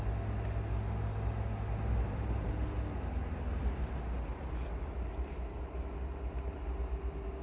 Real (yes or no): yes